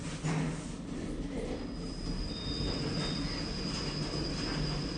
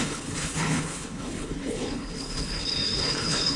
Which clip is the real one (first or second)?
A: first